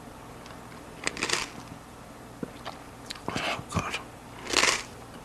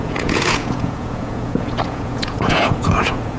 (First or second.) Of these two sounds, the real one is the first